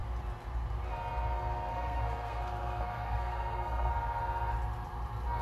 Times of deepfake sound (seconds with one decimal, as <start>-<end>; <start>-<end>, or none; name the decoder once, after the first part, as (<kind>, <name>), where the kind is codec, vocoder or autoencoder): 1.7-3.9 (codec, SNAC)